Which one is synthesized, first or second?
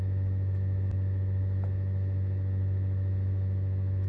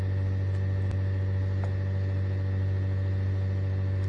first